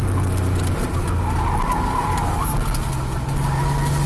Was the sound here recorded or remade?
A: recorded